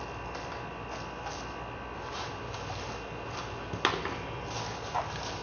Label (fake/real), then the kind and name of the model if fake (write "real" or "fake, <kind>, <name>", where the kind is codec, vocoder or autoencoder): real